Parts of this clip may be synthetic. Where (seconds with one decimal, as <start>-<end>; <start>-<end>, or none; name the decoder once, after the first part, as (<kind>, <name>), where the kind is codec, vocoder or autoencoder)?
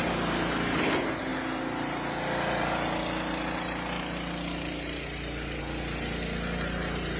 none